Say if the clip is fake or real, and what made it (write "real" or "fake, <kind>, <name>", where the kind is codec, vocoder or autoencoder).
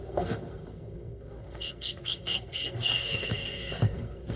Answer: fake, codec, SNAC